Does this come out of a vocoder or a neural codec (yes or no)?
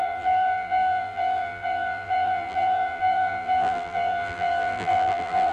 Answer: yes